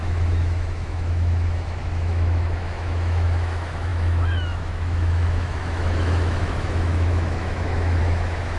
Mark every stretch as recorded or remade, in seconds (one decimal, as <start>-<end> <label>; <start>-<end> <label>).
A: 0.0-8.6 remade

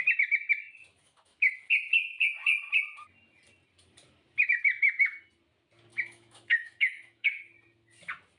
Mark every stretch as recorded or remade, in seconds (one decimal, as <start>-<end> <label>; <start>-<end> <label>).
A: 0.0-0.9 recorded; 0.9-1.5 remade; 1.5-5.9 recorded; 5.9-7.3 remade; 7.3-8.4 recorded

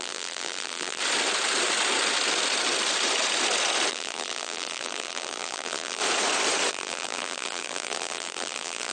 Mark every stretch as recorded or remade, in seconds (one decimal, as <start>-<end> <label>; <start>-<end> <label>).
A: 0.0-1.0 remade; 1.0-3.9 recorded; 3.9-6.0 remade; 6.0-6.7 recorded; 6.7-8.9 remade

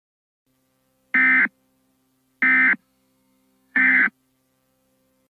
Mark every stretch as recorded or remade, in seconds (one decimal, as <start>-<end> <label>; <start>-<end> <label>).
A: 0.0-2.8 recorded; 2.8-4.1 remade; 4.1-5.4 recorded

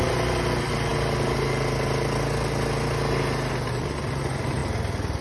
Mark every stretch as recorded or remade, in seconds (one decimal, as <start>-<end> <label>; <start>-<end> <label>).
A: 0.0-5.2 recorded

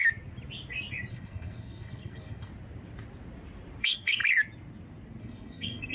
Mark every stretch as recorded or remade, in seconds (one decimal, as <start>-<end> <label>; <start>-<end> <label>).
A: 0.0-1.1 recorded; 1.1-2.5 remade; 2.5-3.8 recorded; 3.8-4.2 remade; 4.2-5.2 recorded; 5.2-5.9 remade

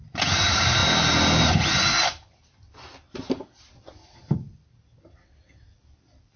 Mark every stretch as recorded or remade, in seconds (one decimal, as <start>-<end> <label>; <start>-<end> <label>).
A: 0.0-6.4 recorded